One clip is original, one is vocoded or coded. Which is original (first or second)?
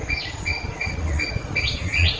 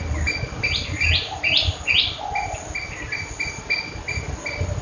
second